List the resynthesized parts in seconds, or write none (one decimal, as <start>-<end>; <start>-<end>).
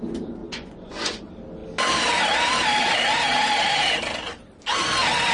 0.4-1.2